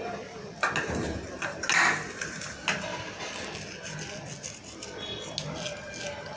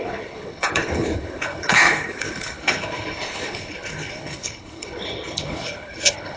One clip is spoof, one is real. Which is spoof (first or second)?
second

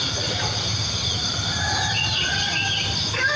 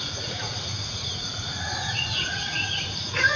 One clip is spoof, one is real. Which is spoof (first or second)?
second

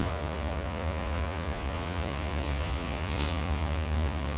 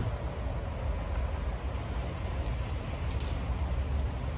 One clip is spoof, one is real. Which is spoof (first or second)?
first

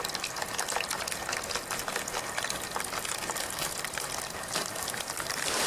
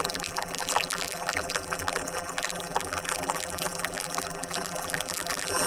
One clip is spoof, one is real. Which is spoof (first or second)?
second